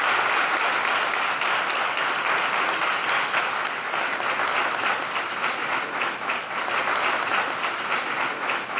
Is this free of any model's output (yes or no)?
yes